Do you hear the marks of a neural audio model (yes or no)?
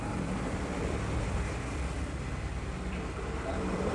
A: no